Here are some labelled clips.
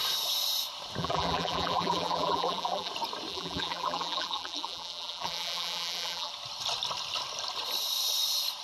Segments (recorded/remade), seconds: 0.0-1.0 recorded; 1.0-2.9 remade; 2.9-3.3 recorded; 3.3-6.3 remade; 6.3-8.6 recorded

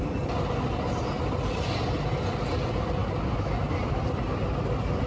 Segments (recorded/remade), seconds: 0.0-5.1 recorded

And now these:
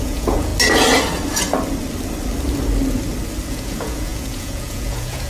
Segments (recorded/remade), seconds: 0.0-0.5 remade; 0.5-3.5 recorded; 3.5-5.3 remade

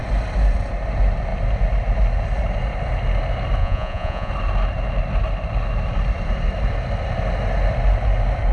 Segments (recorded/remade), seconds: 0.0-3.6 recorded; 3.6-4.3 remade; 4.3-8.5 recorded

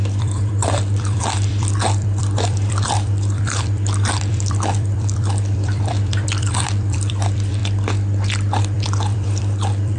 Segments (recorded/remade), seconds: 0.0-7.6 remade; 7.6-8.6 recorded; 8.6-10.0 remade

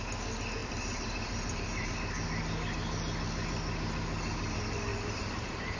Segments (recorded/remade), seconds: 0.0-0.6 recorded; 0.6-1.9 remade; 1.9-4.9 recorded; 4.9-5.8 remade

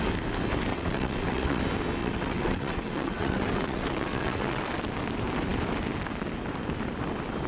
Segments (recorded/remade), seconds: 0.0-0.7 recorded; 0.7-1.6 remade; 1.6-2.0 recorded; 2.0-4.6 remade; 4.6-7.5 recorded

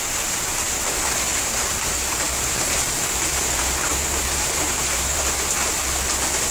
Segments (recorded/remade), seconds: 0.0-1.3 recorded; 1.3-5.2 remade; 5.2-6.5 recorded